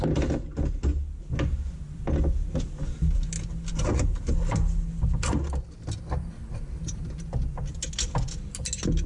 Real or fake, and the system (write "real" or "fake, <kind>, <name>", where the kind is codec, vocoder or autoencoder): real